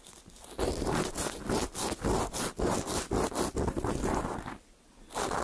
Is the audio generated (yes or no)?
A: no